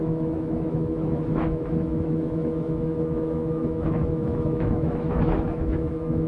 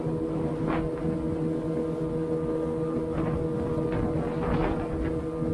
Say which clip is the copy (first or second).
first